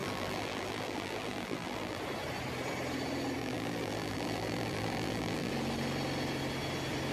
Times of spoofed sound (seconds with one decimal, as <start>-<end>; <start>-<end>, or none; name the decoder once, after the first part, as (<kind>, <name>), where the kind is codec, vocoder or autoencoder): 0.0-2.0 (vocoder, BigVGAN v2); 3.4-5.5